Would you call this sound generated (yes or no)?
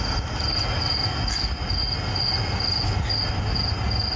no